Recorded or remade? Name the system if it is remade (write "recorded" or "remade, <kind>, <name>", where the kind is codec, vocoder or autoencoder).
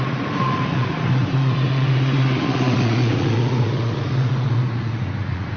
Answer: remade, vocoder, Vocos